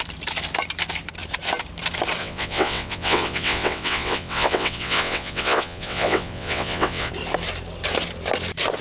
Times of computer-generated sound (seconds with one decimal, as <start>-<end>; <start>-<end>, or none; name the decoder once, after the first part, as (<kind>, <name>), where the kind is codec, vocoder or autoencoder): 2.2-7.1 (vocoder, WaveNeXt)